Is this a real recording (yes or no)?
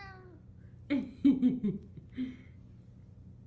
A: yes